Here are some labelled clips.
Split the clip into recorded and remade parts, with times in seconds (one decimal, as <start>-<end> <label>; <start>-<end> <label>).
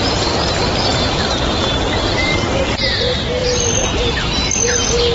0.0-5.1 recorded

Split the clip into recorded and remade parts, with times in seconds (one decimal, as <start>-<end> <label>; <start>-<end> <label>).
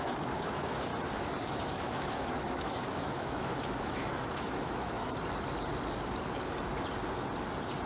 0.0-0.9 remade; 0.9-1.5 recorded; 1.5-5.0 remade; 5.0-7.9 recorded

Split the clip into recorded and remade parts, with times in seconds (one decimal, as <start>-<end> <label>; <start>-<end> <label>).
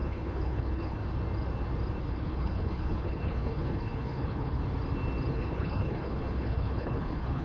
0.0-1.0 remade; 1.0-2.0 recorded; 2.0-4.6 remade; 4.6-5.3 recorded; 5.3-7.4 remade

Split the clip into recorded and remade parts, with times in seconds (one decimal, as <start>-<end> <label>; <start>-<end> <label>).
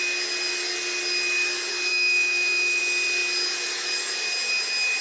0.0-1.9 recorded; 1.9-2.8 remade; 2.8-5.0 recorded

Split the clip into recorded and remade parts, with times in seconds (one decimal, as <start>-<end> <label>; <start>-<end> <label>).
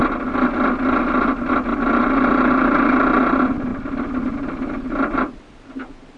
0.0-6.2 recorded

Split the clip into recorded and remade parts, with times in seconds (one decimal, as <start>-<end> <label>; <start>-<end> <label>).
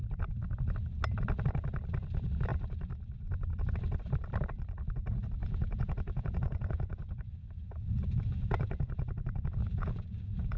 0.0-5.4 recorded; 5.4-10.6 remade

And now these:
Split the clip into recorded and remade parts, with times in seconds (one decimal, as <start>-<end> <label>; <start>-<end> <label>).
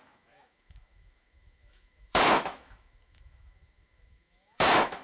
0.0-5.0 remade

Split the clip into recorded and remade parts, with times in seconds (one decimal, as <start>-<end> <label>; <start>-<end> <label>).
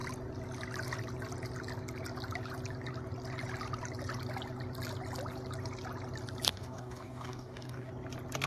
0.0-6.5 recorded; 6.5-7.9 remade; 7.9-8.5 recorded